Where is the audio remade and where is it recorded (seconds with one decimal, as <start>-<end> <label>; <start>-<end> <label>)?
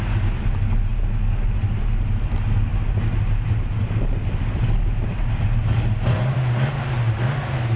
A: 0.0-7.8 recorded